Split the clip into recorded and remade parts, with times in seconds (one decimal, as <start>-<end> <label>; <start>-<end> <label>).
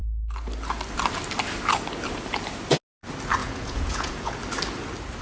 0.0-3.4 recorded; 3.4-4.4 remade; 4.4-5.2 recorded